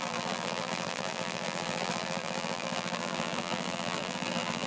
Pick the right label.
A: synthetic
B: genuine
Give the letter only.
A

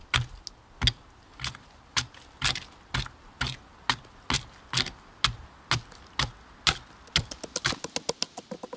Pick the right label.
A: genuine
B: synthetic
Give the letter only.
A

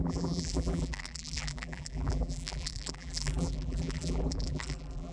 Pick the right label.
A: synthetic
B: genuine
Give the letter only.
A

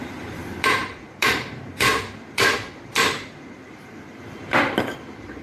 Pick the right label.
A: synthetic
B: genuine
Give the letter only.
A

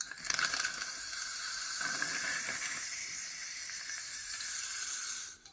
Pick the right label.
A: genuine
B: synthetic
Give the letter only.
B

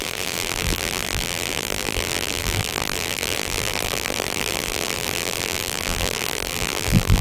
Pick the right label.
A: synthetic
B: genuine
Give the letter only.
A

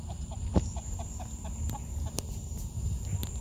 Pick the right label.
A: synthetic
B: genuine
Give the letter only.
A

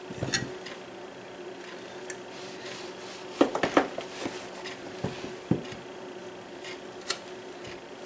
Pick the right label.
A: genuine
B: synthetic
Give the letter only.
A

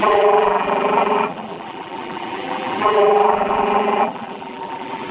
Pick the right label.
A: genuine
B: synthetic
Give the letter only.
B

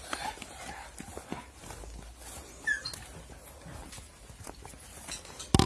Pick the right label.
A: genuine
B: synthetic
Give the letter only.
A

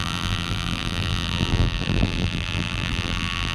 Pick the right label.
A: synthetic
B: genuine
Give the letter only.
A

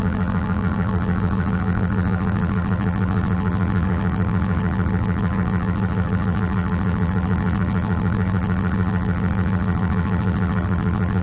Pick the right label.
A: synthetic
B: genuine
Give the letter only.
A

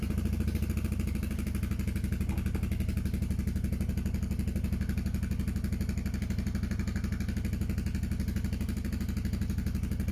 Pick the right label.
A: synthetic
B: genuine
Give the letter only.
B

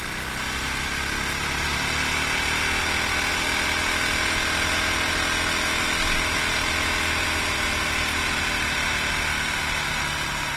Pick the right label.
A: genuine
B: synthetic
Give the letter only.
A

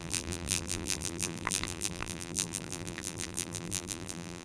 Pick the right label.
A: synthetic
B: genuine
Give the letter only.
A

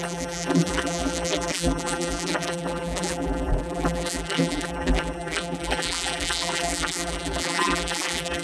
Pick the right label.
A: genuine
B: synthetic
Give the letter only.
B